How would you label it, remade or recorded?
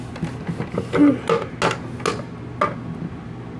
recorded